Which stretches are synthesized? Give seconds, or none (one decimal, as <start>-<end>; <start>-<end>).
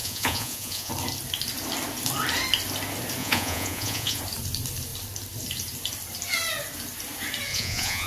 0.0-0.9; 3.2-4.2; 7.5-8.1